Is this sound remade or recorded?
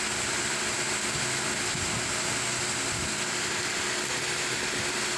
recorded